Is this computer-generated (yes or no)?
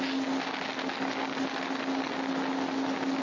no